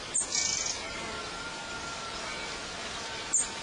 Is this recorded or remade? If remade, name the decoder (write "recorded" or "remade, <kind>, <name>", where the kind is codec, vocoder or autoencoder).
recorded